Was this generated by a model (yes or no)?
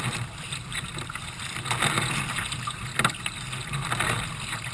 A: no